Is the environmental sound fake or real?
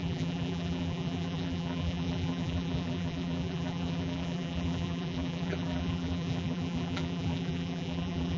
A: fake